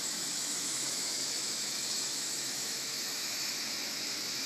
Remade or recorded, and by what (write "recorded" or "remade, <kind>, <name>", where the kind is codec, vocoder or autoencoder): remade, autoencoder, DAC-VAE